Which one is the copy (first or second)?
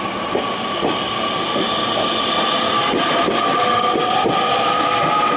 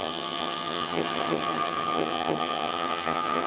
second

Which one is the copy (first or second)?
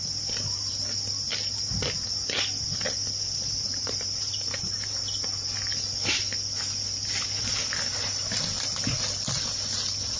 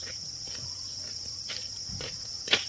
second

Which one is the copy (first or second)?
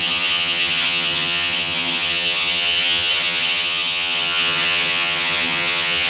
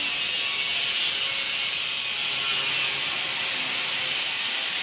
first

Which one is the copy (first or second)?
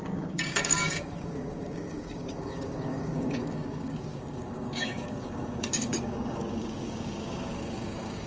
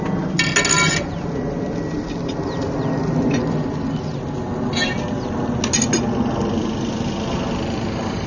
first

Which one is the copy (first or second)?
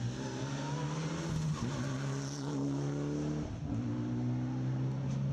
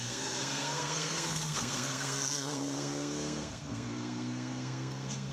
second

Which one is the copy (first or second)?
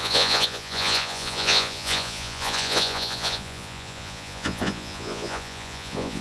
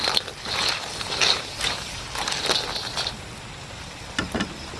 first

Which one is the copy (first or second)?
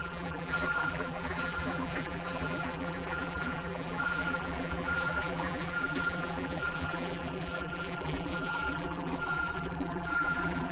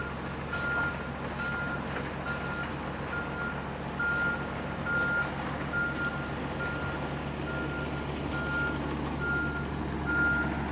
first